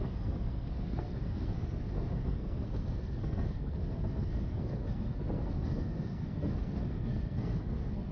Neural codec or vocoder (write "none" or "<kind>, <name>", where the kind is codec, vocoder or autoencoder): codec, SNAC